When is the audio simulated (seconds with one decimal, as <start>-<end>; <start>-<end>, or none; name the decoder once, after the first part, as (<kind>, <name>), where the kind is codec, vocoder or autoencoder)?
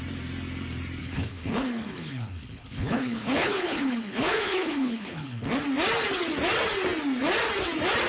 1.0-5.5 (codec, HILCodec)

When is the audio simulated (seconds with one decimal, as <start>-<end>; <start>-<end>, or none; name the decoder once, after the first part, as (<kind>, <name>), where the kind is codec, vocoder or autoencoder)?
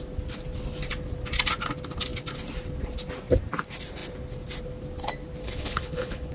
5.4-6.3 (codec, HILCodec)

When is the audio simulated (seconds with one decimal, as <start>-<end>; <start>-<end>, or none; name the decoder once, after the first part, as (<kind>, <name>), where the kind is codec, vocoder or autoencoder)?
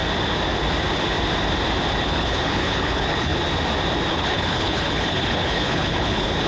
2.0-3.3 (codec, HILCodec); 4.1-6.5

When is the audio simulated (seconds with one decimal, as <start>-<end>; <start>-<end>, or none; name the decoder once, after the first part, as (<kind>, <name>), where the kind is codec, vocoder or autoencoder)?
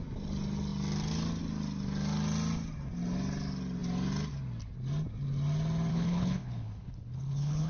5.9-7.7 (codec, HILCodec)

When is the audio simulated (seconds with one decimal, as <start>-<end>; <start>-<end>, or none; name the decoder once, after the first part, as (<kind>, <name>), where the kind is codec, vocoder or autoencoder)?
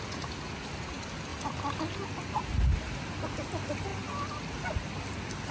none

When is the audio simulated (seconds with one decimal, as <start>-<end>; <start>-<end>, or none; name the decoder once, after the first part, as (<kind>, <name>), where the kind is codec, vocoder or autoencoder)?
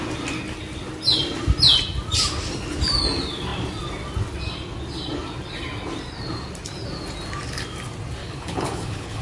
8.2-9.2 (codec, HILCodec)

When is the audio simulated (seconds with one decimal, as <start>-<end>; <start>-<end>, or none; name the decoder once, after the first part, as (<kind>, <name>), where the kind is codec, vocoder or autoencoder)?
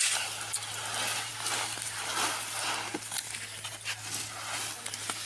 none